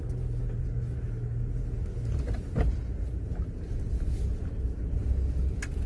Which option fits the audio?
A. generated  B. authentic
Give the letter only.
B